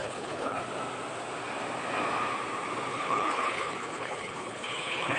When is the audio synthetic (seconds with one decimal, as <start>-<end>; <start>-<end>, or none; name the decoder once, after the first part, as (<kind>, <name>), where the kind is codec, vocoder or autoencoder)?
0.0-0.6 (codec, HILCodec); 2.9-5.2